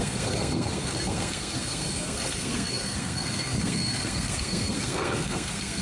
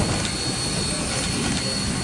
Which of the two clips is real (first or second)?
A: second